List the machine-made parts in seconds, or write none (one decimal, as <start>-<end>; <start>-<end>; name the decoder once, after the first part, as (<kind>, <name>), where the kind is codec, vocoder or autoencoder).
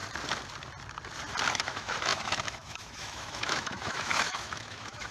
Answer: 1.5-5.1 (autoencoder, DAC-VAE)